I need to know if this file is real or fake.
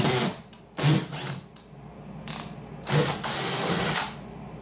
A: real